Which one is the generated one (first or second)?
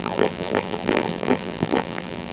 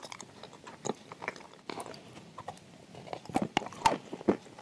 first